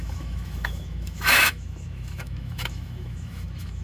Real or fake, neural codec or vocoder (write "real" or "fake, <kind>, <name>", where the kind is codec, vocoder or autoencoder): fake, autoencoder, DAC-VAE